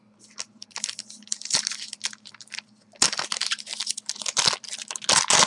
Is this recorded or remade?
recorded